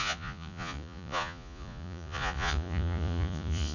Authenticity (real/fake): fake